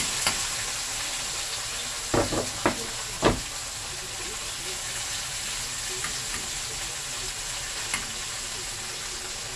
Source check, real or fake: real